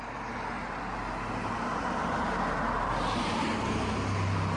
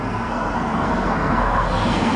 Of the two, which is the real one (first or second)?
first